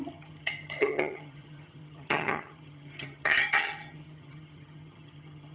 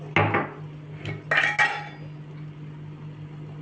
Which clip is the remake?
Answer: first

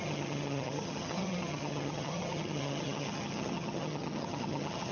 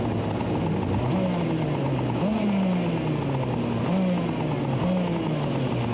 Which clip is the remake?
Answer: first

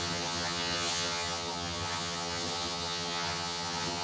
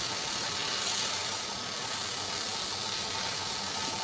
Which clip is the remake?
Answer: first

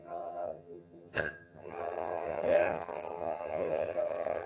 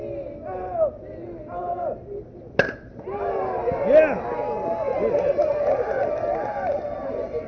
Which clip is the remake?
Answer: first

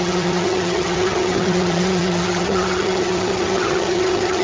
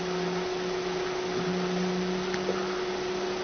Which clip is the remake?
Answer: first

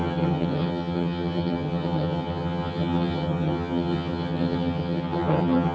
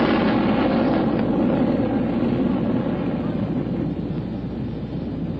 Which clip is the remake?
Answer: first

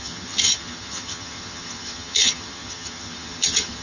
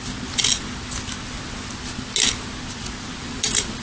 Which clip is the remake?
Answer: first